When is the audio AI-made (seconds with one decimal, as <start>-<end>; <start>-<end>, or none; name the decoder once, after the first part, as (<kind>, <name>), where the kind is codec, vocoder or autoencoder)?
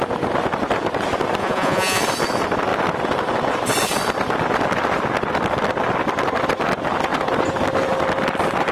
1.4-2.0 (vocoder, Vocos)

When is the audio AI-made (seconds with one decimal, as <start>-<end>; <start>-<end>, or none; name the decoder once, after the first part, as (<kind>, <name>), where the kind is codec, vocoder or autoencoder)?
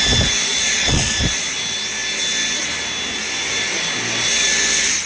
0.5-1.1 (vocoder, Vocos)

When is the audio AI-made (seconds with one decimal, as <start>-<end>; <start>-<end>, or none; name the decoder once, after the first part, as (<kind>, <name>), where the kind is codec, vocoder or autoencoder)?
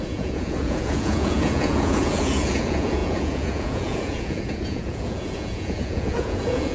0.0-6.7 (vocoder, Vocos)